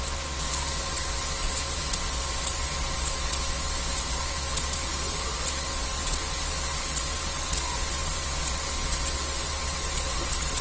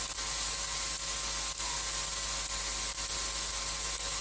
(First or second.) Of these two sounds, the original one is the second